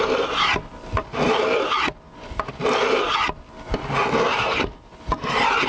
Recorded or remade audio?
recorded